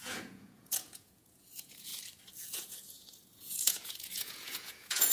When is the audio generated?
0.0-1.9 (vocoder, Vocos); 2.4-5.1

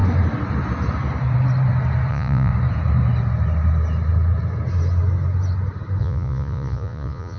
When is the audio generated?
2.1-2.5 (vocoder, Vocos); 6.0-7.4

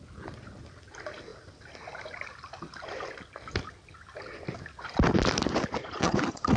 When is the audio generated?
5.8-6.6 (vocoder, Vocos)

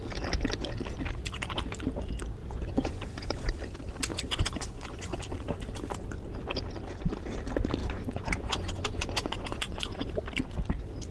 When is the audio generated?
2.4-3.5 (vocoder, Vocos); 4.1-5.1; 7.8-10.2

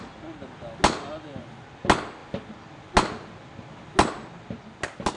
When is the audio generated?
none